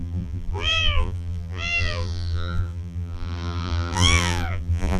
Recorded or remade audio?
remade